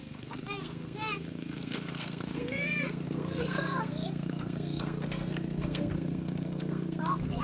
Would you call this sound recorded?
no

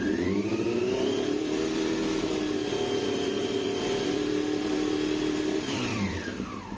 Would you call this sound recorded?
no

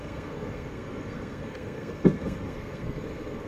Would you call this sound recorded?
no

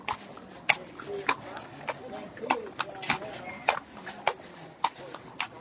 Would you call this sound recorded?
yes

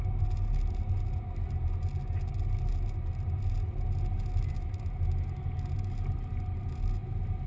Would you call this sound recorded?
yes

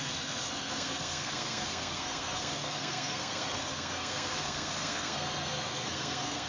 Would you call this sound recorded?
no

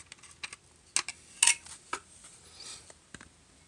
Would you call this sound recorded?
yes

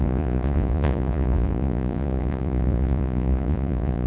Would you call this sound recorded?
no